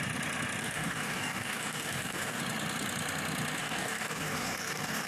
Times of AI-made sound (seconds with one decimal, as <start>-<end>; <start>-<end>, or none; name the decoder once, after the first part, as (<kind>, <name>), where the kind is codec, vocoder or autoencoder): 0.6-2.4 (codec, DAC); 3.6-5.1